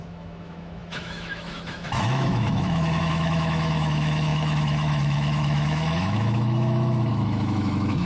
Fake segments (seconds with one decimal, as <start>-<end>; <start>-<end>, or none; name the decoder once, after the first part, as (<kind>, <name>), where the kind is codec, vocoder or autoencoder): 0.0-8.1 (autoencoder, DAC-VAE)